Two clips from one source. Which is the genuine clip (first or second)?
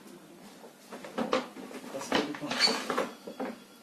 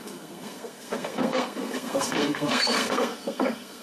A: first